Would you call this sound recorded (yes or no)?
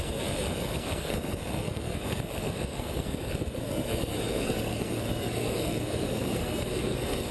no